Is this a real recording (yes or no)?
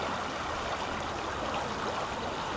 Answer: yes